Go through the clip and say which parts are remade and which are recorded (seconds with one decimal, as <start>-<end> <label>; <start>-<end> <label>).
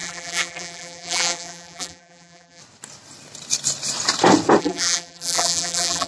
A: 0.0-2.6 remade; 2.6-4.6 recorded; 4.6-6.1 remade